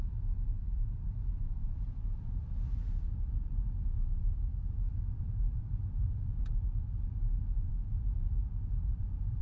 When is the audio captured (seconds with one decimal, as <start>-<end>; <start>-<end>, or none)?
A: 4.5-5.2